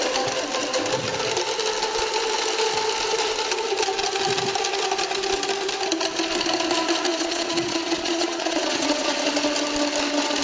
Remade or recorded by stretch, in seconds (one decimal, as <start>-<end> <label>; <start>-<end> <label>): 0.0-7.1 recorded; 7.1-9.3 remade; 9.3-10.4 recorded